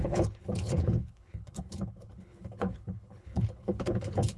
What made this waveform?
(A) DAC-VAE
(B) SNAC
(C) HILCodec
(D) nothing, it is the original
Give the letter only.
C